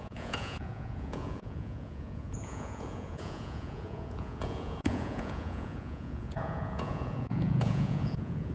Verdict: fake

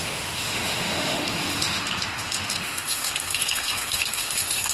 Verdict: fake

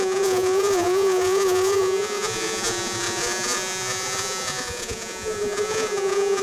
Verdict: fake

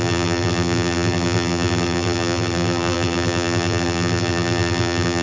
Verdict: fake